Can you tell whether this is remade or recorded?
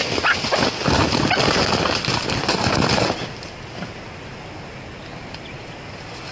recorded